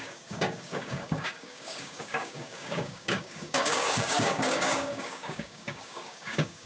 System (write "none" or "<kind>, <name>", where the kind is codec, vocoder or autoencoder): codec, DAC